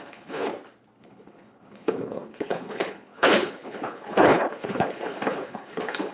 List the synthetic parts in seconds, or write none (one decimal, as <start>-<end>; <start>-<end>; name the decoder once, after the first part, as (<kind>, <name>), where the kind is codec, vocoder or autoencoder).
0.0-0.5 (codec, HILCodec); 1.0-6.1